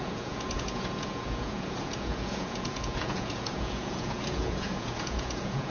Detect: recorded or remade remade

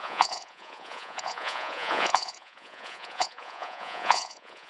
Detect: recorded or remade remade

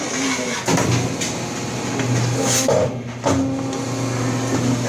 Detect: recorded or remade recorded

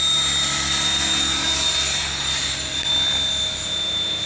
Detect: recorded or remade recorded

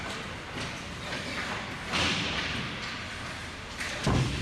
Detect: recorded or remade recorded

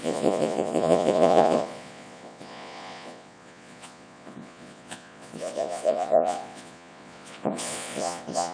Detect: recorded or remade remade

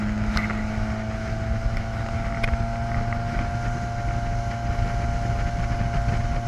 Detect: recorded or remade recorded